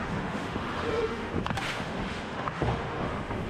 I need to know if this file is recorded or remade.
remade